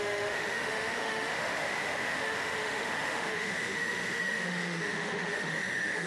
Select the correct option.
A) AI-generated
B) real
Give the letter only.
A